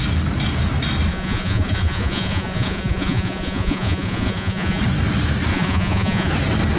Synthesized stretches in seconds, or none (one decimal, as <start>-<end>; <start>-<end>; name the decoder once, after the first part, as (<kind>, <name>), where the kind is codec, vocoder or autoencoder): 1.1-4.8 (vocoder, Vocos); 5.5-6.3